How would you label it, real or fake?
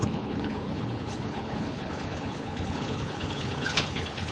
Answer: fake